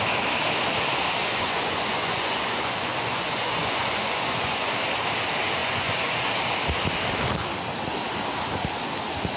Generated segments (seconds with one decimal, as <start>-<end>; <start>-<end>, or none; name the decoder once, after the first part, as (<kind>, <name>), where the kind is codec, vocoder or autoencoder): 1.2-4.7 (vocoder, Vocos); 5.6-6.3